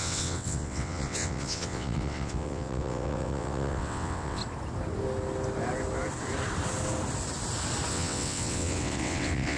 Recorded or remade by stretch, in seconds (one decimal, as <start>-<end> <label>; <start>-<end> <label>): 0.0-4.4 remade; 4.4-7.9 recorded; 7.9-9.6 remade